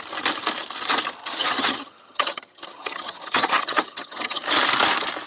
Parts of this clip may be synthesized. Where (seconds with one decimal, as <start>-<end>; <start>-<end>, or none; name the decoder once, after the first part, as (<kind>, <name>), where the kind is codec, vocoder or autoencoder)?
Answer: 1.2-4.4 (vocoder, HiFi-GAN)